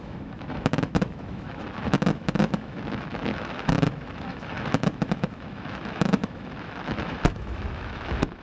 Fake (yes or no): yes